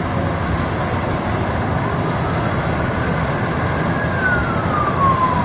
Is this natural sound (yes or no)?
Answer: yes